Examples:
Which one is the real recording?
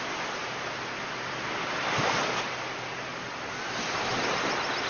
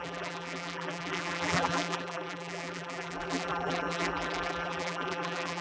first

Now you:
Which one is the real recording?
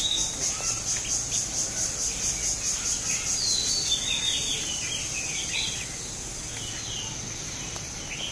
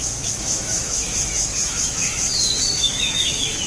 first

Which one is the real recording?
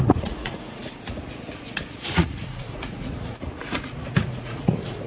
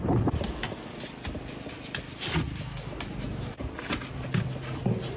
second